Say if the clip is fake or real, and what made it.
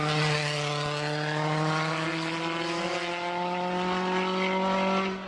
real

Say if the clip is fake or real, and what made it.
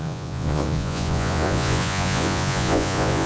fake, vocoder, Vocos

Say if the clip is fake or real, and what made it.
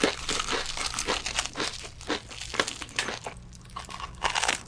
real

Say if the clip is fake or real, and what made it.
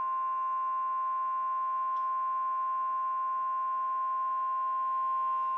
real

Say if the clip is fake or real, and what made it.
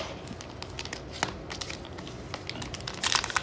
real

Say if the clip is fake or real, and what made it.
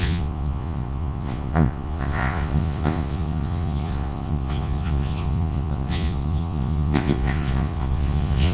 fake, vocoder, Vocos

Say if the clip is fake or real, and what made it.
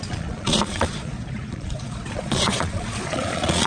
fake, vocoder, Vocos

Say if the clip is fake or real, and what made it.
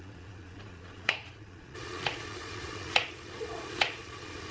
fake, vocoder, Vocos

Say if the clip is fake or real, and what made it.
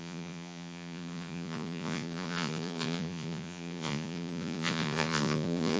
fake, vocoder, Vocos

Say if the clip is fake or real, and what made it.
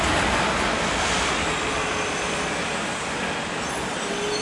real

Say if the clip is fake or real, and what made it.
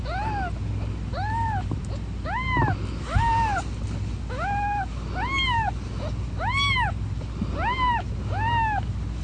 real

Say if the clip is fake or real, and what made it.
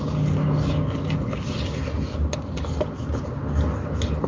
real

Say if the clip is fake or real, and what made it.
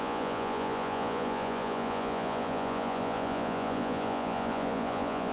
fake, vocoder, Vocos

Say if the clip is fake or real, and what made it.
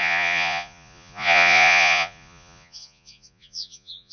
fake, vocoder, Vocos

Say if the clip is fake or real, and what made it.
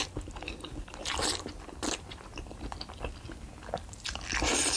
real